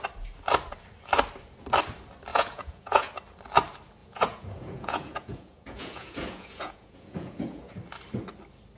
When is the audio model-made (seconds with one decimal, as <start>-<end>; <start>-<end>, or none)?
2.3-3.1; 4.0-7.8